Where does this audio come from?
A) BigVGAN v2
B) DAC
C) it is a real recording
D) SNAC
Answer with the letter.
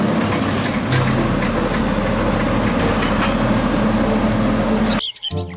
C